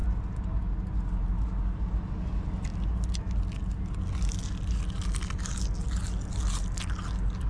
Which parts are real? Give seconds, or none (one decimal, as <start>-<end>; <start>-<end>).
0.0-7.5